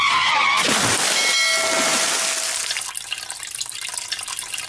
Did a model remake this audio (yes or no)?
no